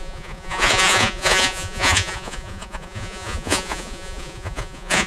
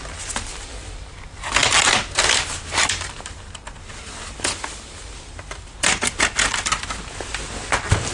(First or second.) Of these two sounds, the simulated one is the first